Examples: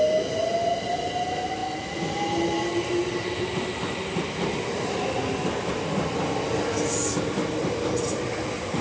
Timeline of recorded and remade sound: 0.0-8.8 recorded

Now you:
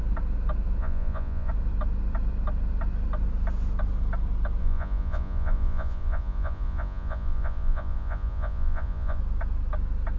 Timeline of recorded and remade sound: 0.0-0.8 recorded; 0.8-1.5 remade; 1.5-4.6 recorded; 4.6-9.2 remade; 9.2-10.2 recorded